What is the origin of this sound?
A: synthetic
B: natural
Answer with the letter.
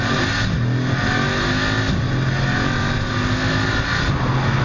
B